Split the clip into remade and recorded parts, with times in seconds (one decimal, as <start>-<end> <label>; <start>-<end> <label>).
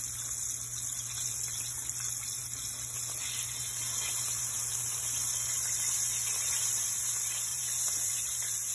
0.0-7.5 recorded; 7.5-8.1 remade; 8.1-8.7 recorded